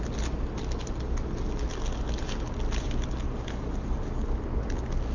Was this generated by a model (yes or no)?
no